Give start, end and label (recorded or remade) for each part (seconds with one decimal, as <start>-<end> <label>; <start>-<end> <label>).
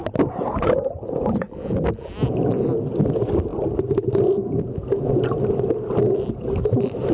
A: 0.0-3.5 recorded; 3.5-4.2 remade; 4.2-7.1 recorded